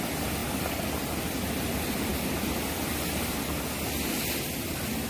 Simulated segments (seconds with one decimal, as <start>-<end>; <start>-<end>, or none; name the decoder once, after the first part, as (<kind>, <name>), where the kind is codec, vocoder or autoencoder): none